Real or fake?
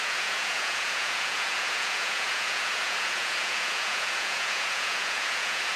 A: fake